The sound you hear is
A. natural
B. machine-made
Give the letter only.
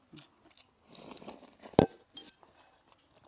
A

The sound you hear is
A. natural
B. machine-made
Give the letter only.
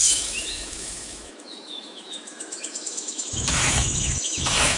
B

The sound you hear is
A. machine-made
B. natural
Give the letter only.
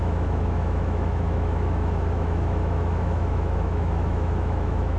A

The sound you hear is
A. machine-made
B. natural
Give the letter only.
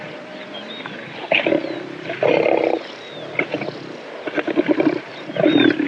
B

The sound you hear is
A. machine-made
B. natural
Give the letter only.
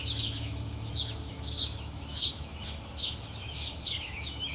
A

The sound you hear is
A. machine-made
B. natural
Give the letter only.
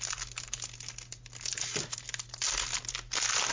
B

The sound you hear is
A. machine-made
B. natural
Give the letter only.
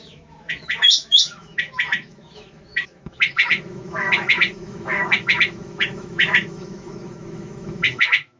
A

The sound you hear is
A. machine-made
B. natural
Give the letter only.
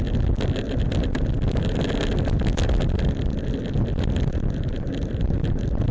B